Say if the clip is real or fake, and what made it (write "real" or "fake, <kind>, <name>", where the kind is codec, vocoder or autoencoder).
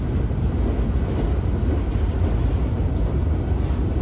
real